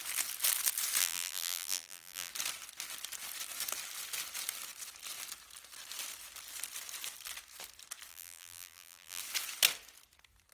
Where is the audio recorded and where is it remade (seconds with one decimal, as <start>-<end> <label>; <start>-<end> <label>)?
0.0-1.0 recorded; 1.0-2.3 remade; 2.3-8.1 recorded; 8.1-9.2 remade; 9.2-10.5 recorded